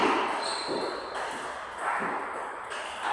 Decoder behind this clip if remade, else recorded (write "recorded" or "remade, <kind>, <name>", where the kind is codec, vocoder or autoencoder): recorded